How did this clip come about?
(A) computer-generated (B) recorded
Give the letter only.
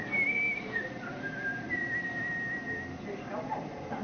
B